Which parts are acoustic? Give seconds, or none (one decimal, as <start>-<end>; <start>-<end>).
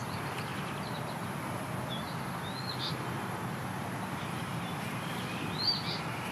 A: 0.0-6.3